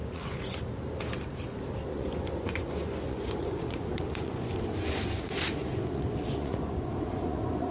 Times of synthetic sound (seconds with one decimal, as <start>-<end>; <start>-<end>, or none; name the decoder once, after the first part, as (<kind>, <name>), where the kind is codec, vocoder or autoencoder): 0.0-0.6 (vocoder, Vocos); 1.9-4.5; 5.6-7.7